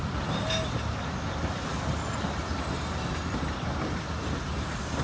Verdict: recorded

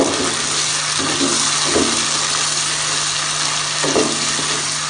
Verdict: recorded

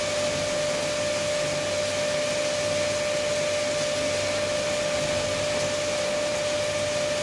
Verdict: recorded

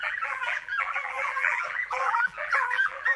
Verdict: remade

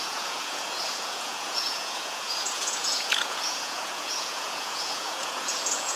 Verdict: remade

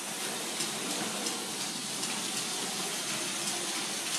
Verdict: recorded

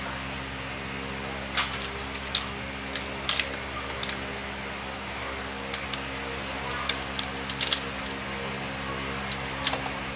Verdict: recorded